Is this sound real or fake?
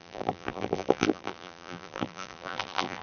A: fake